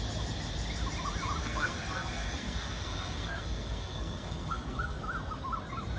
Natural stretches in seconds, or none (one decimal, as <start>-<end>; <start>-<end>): 0.0-1.4; 5.0-6.0